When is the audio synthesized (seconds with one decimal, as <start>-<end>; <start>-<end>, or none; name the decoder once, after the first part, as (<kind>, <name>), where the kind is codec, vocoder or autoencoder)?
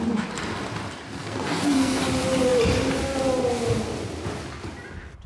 1.2-2.0 (codec, SNAC)